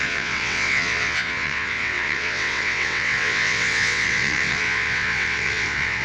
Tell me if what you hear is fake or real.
fake